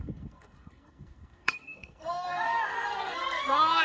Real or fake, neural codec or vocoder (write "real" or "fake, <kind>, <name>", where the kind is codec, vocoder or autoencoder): fake, codec, SNAC